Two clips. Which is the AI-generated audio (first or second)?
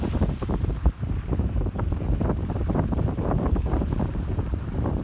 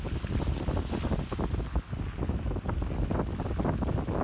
first